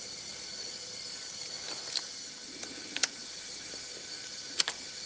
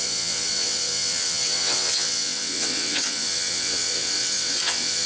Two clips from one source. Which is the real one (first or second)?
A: first